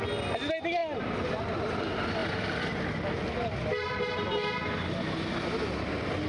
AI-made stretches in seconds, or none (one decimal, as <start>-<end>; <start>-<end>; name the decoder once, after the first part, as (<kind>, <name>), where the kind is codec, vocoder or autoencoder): none